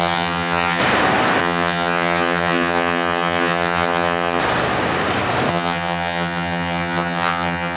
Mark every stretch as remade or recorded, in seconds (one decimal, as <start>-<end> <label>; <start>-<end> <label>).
0.0-0.8 remade; 0.8-1.4 recorded; 1.4-4.4 remade; 4.4-5.5 recorded; 5.5-7.8 remade